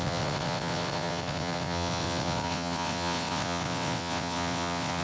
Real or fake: fake